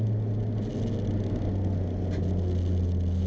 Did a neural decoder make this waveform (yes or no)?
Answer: no